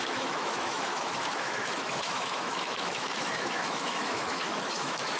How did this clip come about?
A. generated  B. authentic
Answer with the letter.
A